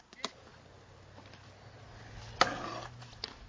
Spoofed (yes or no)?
no